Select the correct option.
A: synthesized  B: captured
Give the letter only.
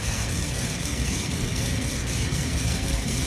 A